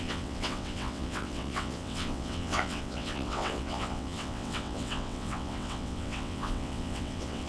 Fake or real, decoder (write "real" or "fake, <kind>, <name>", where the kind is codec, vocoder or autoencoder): fake, vocoder, WaveNeXt